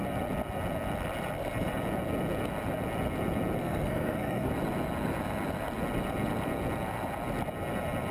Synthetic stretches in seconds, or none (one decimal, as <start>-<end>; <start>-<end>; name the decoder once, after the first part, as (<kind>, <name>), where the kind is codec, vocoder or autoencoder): 3.6-4.5 (codec, SNAC)